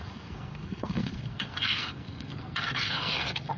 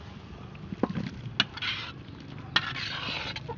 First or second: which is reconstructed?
first